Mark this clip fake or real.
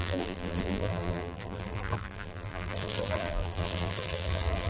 fake